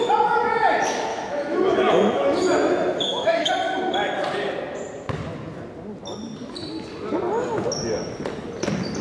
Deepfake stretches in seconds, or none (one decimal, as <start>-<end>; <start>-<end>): 1.1-3.5